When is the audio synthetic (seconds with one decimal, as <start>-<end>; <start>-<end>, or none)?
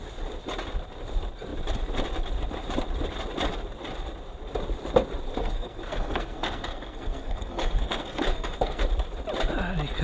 5.4-8.8